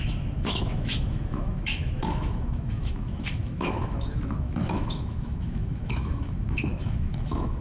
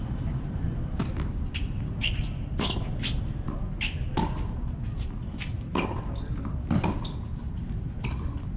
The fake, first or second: first